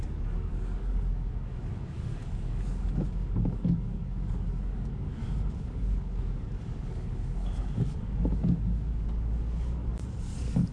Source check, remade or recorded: remade